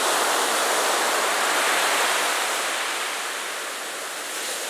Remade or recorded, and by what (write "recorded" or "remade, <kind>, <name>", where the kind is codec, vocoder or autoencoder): recorded